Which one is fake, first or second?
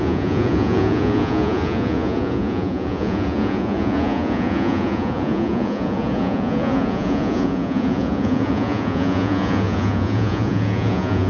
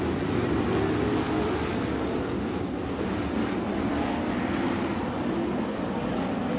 first